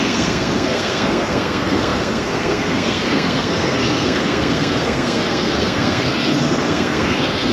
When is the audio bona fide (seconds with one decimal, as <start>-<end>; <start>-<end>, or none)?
none